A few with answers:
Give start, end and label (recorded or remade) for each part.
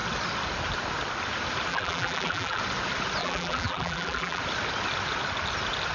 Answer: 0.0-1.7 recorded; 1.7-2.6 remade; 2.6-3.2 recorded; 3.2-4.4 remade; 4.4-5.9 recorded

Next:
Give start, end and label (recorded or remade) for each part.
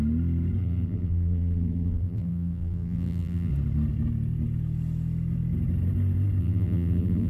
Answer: 0.0-0.6 recorded; 0.6-3.5 remade; 3.5-6.4 recorded; 6.4-7.3 remade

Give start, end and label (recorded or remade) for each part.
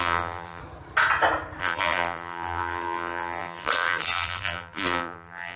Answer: 0.0-0.6 remade; 0.6-1.6 recorded; 1.6-5.6 remade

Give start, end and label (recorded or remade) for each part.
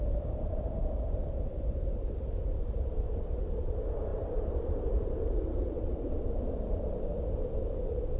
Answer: 0.0-4.1 recorded; 4.1-6.1 remade; 6.1-8.2 recorded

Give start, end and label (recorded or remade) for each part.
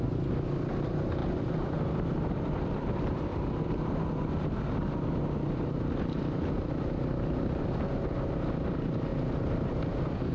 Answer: 0.0-1.2 recorded; 1.2-3.4 remade; 3.4-10.3 recorded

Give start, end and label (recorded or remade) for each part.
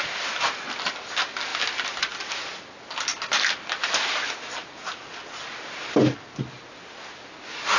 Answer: 0.0-7.8 recorded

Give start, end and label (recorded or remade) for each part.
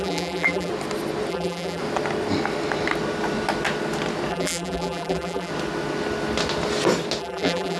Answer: 0.0-0.7 remade; 0.7-1.3 recorded; 1.3-1.8 remade; 1.8-4.3 recorded; 4.3-5.5 remade; 5.5-7.2 recorded; 7.2-7.8 remade